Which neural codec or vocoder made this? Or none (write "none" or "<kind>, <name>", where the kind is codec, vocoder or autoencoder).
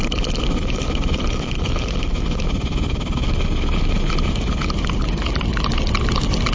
none